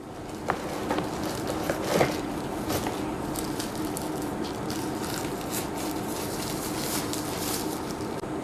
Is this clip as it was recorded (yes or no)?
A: yes